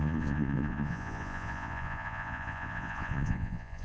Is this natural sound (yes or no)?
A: no